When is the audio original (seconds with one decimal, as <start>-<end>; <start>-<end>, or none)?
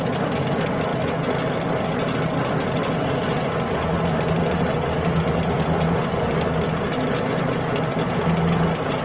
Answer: 0.0-9.0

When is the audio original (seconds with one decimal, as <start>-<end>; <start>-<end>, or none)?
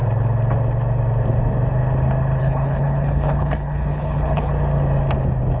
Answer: 0.0-2.4; 4.5-5.6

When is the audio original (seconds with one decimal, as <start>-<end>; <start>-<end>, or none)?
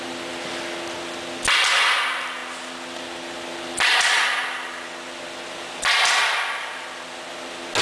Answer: 0.0-7.8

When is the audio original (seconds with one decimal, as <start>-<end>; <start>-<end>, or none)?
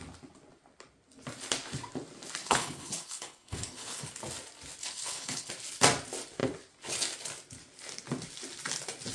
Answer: 0.0-2.4; 4.1-4.8; 5.5-9.1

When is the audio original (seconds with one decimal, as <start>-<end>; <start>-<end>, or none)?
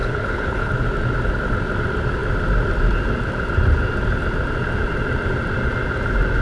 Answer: 0.7-6.4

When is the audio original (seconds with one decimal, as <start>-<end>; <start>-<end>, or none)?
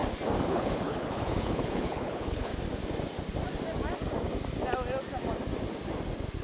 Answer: 0.0-0.5; 2.5-6.4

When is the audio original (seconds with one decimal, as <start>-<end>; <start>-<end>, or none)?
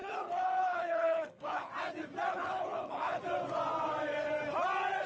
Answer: 1.7-2.3; 3.2-5.1